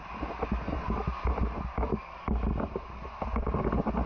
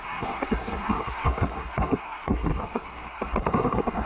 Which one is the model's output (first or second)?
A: second